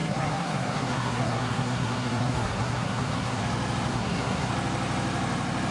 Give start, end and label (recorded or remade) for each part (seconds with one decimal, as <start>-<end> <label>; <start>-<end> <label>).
0.0-3.4 remade; 3.4-3.9 recorded; 3.9-4.5 remade; 4.5-5.7 recorded